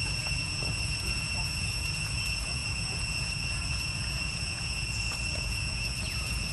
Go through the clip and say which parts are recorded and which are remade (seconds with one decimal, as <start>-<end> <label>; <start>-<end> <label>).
0.0-6.5 remade